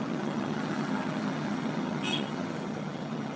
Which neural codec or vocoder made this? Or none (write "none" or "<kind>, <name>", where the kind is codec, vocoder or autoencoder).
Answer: vocoder, HiFi-GAN